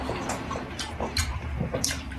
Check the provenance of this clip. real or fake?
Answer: fake